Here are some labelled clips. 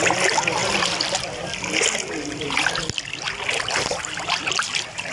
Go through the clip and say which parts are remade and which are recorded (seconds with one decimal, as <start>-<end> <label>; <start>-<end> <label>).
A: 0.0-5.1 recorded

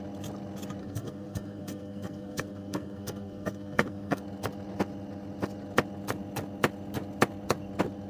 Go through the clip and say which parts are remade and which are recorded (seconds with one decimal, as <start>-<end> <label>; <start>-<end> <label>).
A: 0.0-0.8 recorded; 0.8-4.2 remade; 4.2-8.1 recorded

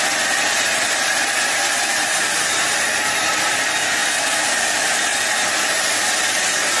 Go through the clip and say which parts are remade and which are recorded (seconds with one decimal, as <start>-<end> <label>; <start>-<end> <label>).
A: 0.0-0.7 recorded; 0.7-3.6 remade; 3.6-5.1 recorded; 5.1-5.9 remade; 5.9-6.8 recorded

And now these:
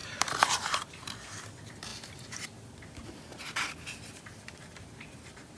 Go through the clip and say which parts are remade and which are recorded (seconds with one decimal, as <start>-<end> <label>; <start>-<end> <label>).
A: 0.0-5.6 remade

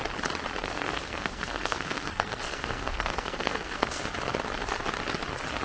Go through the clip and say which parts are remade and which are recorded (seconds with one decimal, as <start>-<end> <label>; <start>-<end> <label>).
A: 0.0-0.6 recorded; 0.6-4.0 remade; 4.0-5.6 recorded

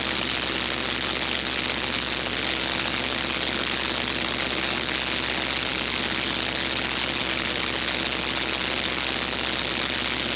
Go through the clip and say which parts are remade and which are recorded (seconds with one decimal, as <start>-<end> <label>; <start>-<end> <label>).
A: 0.0-10.4 recorded